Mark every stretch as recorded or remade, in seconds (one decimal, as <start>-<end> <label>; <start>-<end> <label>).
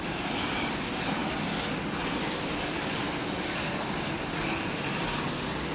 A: 0.0-5.7 recorded